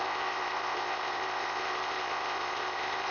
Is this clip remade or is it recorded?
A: remade